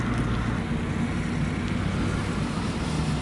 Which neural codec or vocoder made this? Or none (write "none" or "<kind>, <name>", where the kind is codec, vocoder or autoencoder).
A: none